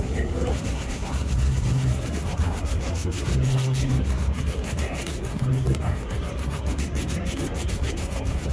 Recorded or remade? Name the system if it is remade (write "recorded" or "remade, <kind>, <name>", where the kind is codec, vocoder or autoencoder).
remade, codec, SNAC